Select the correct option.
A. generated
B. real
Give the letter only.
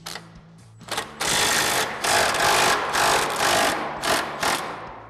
A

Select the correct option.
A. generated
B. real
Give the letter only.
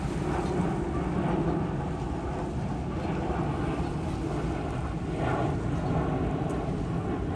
B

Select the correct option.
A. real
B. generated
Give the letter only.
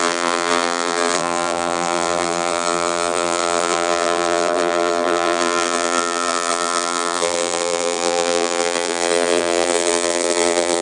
B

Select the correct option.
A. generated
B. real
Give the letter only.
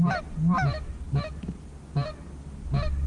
B